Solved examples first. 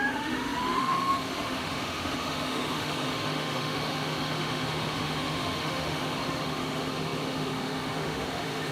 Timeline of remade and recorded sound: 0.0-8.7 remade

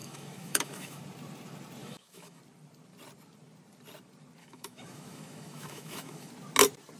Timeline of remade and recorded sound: 0.0-1.0 remade; 1.0-1.8 recorded; 1.8-2.4 remade; 2.4-4.4 recorded; 4.4-6.3 remade; 6.3-7.0 recorded

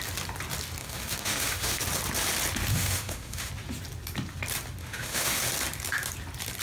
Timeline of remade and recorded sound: 0.0-0.8 recorded; 0.8-1.8 remade; 1.8-2.7 recorded; 2.7-3.5 remade; 3.5-4.8 recorded; 4.8-5.4 remade; 5.4-6.6 recorded